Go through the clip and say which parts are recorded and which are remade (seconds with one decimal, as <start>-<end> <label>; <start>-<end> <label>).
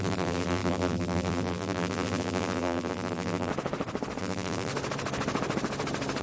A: 0.0-3.5 remade; 3.5-4.2 recorded; 4.2-4.7 remade; 4.7-6.2 recorded